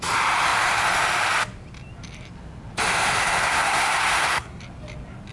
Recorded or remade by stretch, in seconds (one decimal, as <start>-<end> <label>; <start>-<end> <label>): 0.0-3.4 recorded; 3.4-4.6 remade; 4.6-5.3 recorded